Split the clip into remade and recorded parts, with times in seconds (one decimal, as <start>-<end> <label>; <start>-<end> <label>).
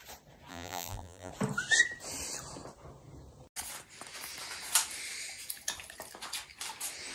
0.0-0.5 recorded; 0.5-1.3 remade; 1.3-7.1 recorded